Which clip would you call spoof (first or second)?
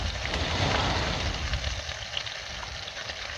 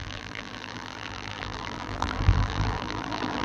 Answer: second